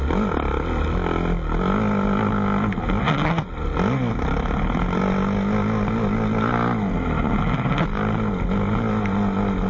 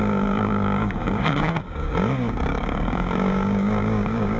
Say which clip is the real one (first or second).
first